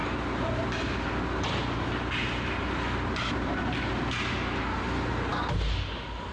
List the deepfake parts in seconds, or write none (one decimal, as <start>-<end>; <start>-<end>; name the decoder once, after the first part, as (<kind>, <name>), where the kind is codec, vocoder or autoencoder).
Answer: none